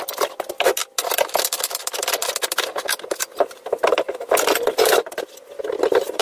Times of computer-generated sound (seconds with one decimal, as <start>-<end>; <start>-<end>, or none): none